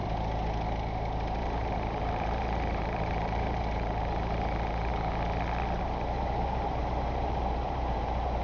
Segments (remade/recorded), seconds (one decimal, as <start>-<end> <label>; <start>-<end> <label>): 0.0-1.4 recorded; 1.4-4.9 remade; 4.9-5.8 recorded; 5.8-8.4 remade